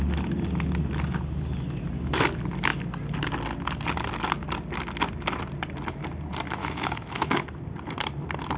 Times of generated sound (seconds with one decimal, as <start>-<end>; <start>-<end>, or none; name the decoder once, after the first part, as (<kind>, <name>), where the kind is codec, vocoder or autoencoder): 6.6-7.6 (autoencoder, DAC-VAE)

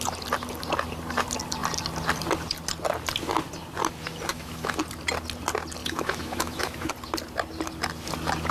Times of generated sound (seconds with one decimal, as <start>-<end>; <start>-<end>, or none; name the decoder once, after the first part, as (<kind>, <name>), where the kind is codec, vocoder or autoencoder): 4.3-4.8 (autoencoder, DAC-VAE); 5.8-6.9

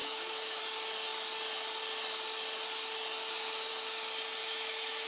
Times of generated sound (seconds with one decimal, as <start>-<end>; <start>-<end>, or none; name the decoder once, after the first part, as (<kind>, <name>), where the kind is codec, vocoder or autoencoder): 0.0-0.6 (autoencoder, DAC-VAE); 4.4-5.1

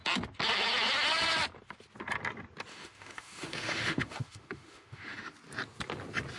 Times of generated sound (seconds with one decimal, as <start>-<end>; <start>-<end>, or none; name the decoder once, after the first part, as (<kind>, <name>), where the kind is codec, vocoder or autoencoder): 2.7-5.3 (autoencoder, DAC-VAE)